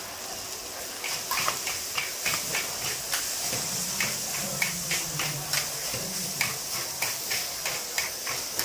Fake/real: real